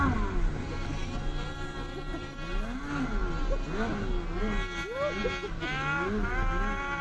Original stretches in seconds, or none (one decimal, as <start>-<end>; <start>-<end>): 0.0-7.0